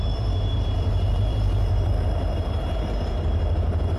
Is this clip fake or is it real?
fake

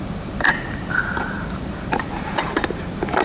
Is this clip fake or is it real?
fake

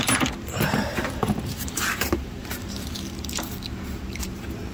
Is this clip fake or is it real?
fake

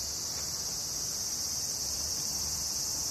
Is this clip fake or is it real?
fake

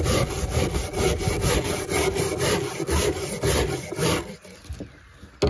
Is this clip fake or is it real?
real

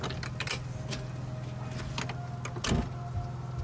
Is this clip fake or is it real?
real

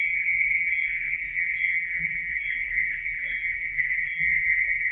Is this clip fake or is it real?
fake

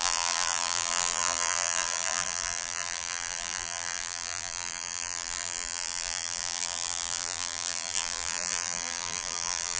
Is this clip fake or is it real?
fake